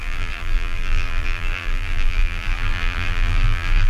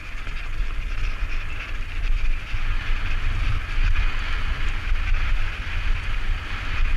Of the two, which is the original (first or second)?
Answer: second